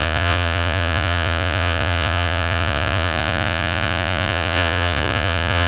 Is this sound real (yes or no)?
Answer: no